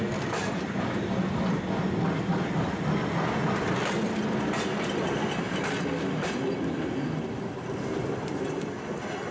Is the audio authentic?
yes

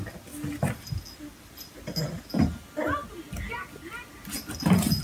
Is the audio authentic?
yes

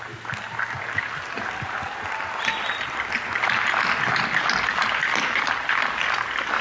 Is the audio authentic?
yes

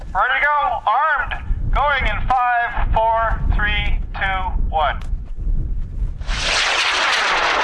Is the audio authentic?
yes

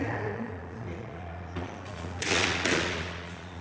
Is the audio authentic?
no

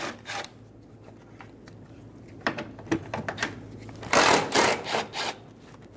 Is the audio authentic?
yes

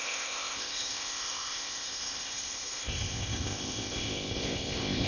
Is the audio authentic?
no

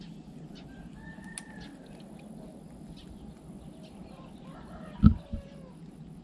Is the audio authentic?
yes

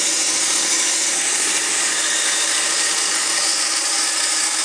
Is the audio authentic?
no